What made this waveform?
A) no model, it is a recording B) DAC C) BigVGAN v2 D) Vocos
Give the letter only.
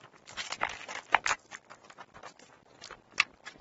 A